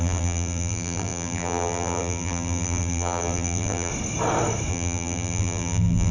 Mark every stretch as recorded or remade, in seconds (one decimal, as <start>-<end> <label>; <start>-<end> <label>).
0.0-3.9 remade; 3.9-4.7 recorded; 4.7-6.1 remade